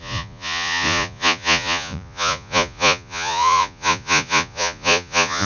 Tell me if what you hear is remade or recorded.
remade